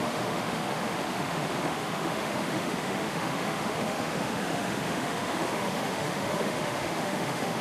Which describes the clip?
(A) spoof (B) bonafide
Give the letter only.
A